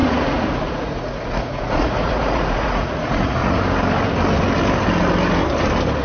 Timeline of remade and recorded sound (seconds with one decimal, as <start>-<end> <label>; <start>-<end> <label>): 0.0-3.6 remade; 3.6-6.0 recorded